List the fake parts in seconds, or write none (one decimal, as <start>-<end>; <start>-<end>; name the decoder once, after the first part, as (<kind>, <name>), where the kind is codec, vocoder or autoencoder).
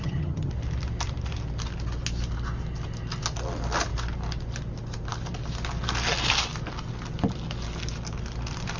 0.0-0.5 (vocoder, HiFi-GAN)